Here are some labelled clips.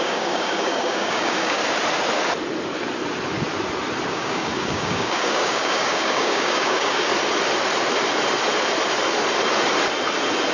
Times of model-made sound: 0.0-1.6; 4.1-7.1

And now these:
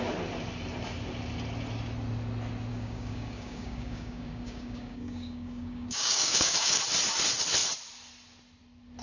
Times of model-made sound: 2.7-6.8

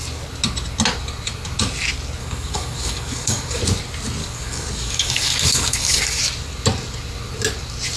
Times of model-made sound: 2.2-3.6; 4.2-6.2

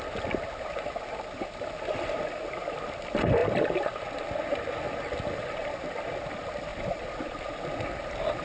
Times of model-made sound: none

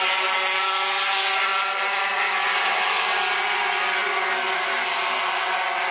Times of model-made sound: none

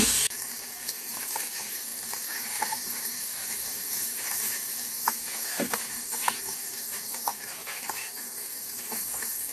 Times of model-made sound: 0.0-9.5